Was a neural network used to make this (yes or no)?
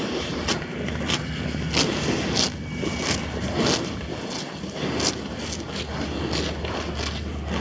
no